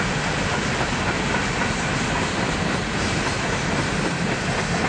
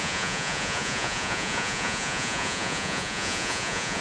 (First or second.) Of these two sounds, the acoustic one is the first